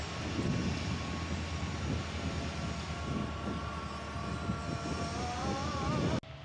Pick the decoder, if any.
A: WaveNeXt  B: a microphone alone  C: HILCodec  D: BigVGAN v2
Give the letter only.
B